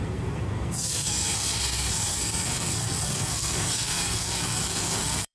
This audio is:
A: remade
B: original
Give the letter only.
A